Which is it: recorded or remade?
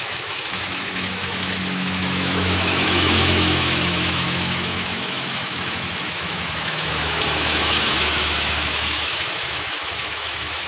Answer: remade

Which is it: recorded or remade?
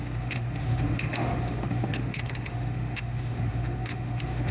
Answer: remade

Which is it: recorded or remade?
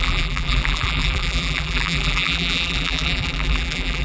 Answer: remade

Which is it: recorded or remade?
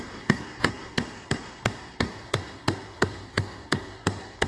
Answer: remade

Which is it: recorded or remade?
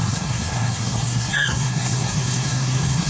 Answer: remade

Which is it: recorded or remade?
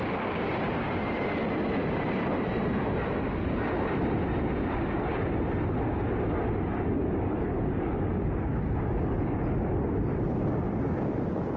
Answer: recorded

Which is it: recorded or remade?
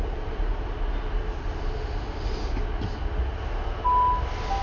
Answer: recorded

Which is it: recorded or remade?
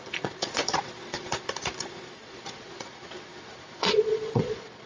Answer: remade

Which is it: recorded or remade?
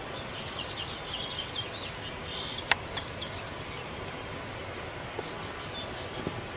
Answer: recorded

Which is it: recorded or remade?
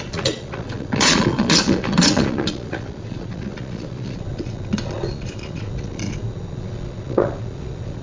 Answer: remade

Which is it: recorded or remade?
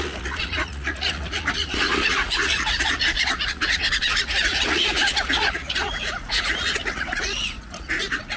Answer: remade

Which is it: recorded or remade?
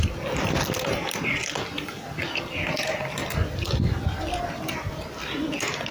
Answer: recorded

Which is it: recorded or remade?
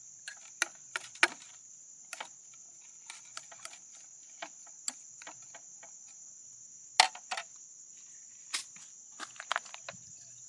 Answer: recorded